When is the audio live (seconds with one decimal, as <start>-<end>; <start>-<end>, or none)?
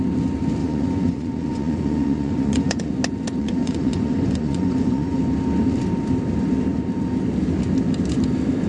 0.0-0.6; 2.9-3.4; 5.2-8.7